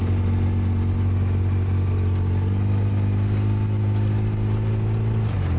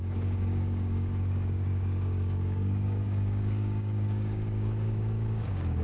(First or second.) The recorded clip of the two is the first